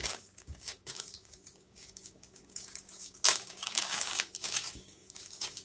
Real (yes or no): no